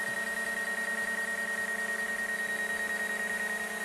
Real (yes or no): yes